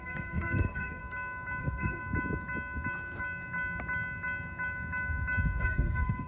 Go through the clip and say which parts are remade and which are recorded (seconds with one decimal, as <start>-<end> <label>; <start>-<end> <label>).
0.0-1.0 remade; 1.0-1.6 recorded; 1.6-2.0 remade; 2.0-5.6 recorded; 5.6-6.3 remade